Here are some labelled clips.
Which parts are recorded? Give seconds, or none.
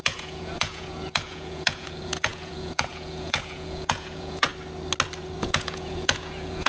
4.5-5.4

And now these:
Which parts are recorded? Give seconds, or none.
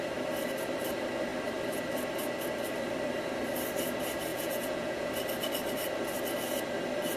0.0-4.3; 5.1-7.2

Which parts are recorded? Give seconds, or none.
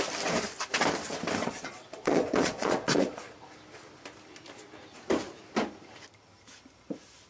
0.0-1.4; 3.2-7.3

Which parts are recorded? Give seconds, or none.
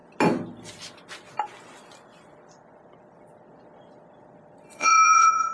0.0-4.8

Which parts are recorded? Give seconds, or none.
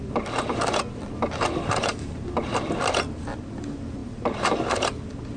0.0-5.4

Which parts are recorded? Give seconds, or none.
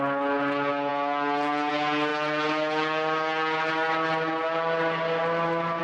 0.0-5.8